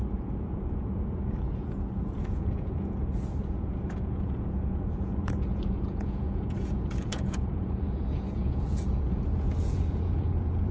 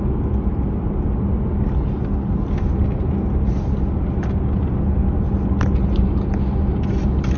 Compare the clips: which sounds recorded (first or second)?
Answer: second